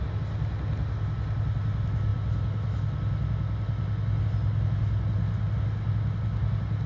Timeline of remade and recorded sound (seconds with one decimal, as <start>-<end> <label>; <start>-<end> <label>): 0.0-6.9 recorded